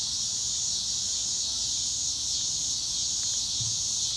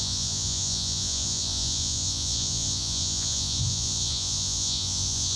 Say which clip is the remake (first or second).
second